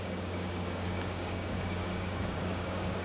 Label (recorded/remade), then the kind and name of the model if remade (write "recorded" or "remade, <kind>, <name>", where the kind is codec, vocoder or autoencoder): remade, codec, DAC